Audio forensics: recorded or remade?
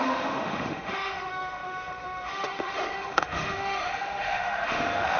remade